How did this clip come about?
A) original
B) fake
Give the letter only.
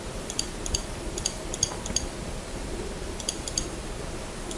A